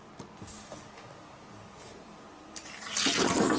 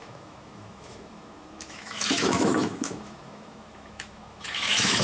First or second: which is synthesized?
second